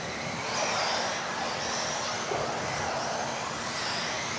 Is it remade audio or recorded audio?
recorded